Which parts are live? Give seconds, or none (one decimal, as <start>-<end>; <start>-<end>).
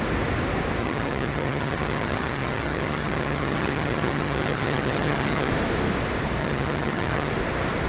0.0-0.8; 5.5-6.4; 7.3-7.9